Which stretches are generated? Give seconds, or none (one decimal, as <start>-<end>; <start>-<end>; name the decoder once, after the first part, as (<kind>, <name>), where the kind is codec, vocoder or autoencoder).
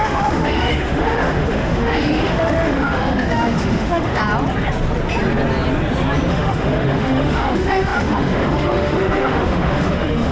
0.0-4.2 (autoencoder, DAC-VAE); 6.3-10.3